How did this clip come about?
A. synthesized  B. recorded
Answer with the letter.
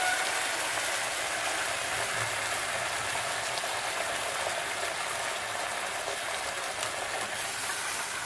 B